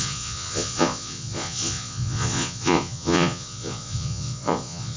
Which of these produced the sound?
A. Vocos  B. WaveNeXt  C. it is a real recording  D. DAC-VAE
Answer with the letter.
A